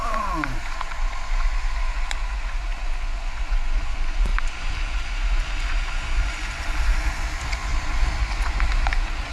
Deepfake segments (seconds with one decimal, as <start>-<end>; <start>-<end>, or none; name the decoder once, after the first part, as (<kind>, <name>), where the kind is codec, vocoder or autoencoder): 0.0-9.3 (vocoder, Vocos)